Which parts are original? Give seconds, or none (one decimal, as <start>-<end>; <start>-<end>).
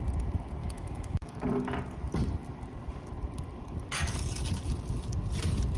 0.0-0.6; 1.4-5.8